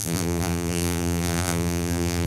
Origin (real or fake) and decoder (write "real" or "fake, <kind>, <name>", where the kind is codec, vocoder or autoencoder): fake, vocoder, BigVGAN v2